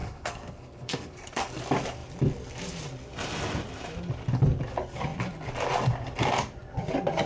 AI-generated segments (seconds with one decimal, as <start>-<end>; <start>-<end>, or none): 0.0-1.5